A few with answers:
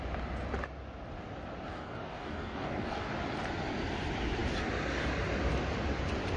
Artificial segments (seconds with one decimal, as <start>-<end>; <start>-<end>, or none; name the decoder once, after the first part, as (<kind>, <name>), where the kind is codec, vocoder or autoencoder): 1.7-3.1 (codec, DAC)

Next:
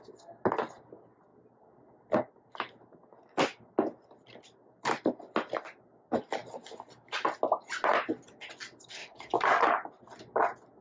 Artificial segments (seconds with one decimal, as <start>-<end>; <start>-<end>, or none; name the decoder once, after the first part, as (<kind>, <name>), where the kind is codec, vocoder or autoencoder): 9.0-9.7 (codec, DAC)

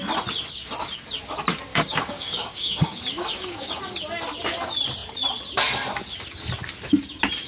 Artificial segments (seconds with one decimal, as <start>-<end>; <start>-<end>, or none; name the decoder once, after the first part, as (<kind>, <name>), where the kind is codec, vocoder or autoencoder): 1.7-3.8 (codec, DAC)

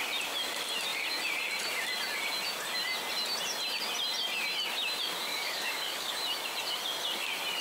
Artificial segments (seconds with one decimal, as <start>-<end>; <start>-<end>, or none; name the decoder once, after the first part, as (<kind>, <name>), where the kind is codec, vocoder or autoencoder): 5.3-6.1 (codec, DAC)

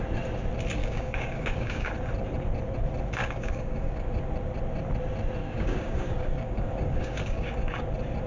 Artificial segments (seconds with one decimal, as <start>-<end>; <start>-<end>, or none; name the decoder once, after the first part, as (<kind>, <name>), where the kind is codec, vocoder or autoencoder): 0.8-1.9 (codec, DAC); 3.2-4.1; 5.4-7.8